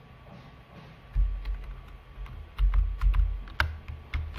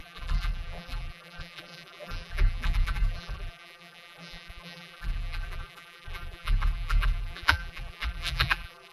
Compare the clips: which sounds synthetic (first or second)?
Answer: second